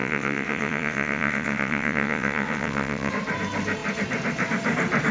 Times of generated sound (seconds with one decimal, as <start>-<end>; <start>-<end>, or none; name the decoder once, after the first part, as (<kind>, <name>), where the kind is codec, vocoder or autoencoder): 0.0-3.1 (vocoder, WaveNeXt)